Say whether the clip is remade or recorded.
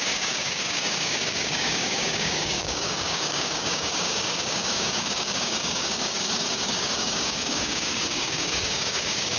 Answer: remade